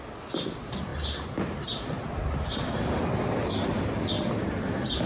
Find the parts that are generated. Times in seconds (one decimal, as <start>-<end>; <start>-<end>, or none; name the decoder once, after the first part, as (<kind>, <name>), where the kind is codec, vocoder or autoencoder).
none